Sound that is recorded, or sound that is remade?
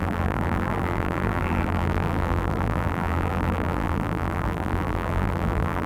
remade